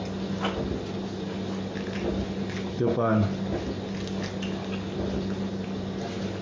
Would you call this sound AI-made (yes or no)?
no